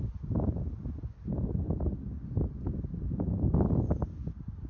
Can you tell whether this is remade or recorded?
recorded